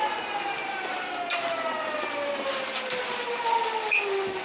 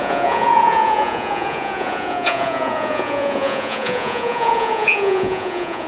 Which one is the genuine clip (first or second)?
first